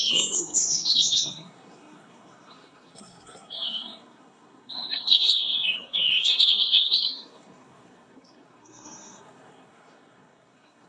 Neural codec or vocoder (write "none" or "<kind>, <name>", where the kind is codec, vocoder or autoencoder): codec, SNAC